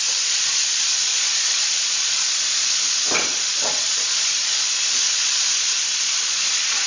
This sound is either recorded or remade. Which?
remade